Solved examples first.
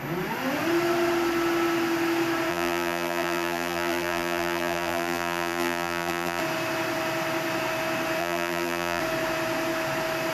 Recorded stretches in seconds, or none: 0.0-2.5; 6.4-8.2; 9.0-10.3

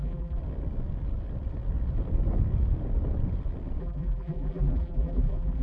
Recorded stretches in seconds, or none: 0.4-3.8

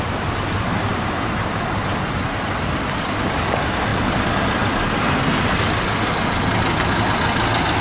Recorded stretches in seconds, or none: 0.0-0.9; 1.9-7.8

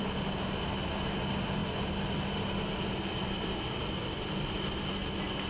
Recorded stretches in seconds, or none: 0.0-5.5